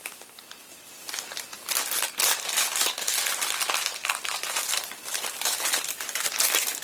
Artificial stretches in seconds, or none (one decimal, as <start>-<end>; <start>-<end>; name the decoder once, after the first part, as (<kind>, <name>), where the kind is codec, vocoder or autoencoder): 5.0-6.8 (vocoder, BigVGAN v2)